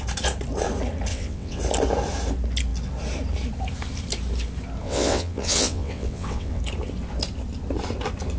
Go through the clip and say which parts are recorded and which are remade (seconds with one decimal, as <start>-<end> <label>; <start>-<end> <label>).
0.0-1.1 recorded; 1.1-1.6 remade; 1.6-4.8 recorded; 4.8-6.6 remade; 6.6-8.4 recorded